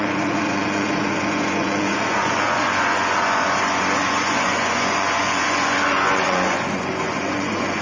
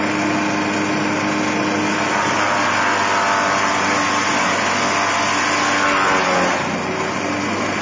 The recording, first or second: second